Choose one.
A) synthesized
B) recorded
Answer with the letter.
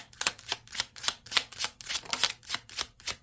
B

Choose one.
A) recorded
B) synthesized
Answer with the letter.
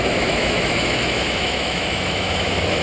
B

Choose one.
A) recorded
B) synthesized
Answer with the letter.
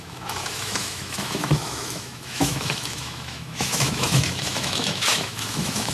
B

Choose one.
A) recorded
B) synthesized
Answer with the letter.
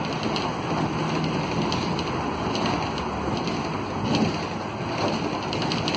A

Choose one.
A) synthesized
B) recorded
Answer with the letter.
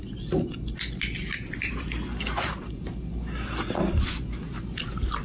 B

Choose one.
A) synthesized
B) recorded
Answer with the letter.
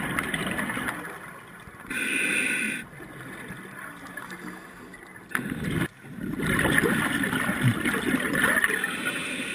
B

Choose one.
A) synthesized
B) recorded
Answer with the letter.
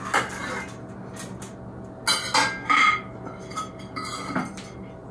B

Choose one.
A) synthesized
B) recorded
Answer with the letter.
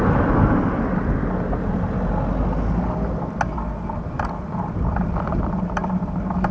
B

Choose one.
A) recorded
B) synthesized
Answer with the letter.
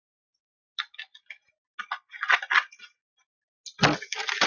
A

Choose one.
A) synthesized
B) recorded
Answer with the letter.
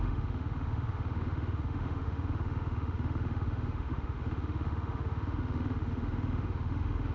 A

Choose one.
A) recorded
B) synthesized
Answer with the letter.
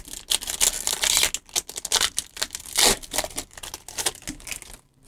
A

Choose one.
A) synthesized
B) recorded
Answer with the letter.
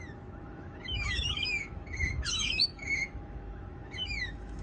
A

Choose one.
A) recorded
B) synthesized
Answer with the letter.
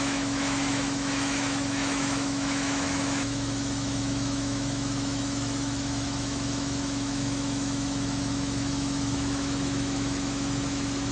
B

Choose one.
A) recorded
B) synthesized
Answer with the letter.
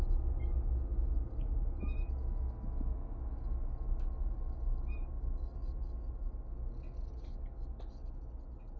A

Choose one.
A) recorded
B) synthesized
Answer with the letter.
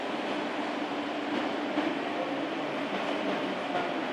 A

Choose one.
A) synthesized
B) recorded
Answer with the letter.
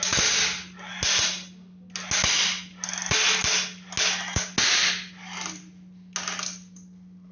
B